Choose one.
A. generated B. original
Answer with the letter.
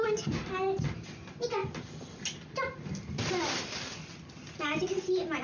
B